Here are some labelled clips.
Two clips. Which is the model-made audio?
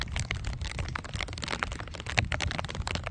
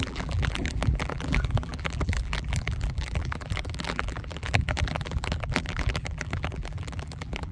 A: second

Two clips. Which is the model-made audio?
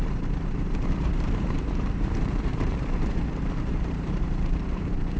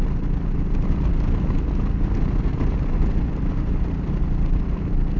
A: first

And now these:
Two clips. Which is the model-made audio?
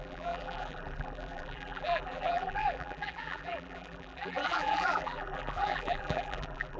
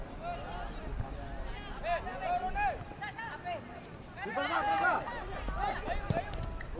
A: first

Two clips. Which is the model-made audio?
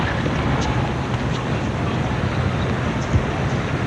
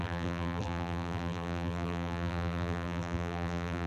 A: second